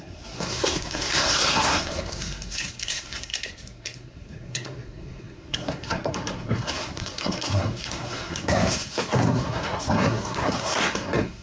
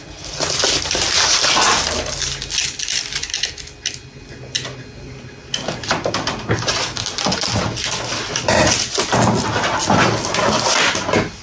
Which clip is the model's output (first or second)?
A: first